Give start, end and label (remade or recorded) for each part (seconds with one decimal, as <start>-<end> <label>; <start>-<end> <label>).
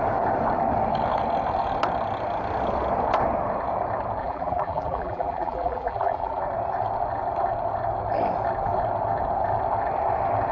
0.0-4.2 recorded; 4.2-6.4 remade; 6.4-10.5 recorded